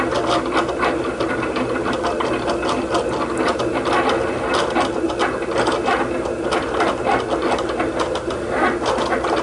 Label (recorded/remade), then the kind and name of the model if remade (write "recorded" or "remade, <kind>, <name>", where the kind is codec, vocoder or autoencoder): recorded